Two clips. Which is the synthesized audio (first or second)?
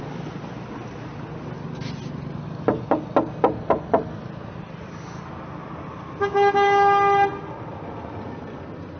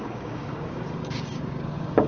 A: second